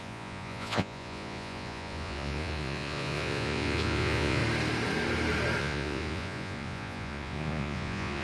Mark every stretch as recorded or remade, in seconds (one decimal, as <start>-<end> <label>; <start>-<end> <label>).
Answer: 0.0-4.4 remade; 4.4-5.6 recorded; 5.6-8.2 remade